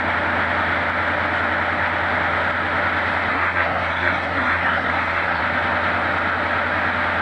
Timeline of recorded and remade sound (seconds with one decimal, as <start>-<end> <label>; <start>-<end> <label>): 0.0-3.3 recorded; 3.3-5.4 remade; 5.4-7.2 recorded